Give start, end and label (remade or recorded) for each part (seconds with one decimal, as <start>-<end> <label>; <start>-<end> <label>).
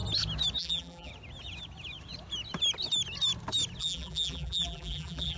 0.0-0.6 recorded; 0.6-1.1 remade; 1.1-3.8 recorded; 3.8-5.4 remade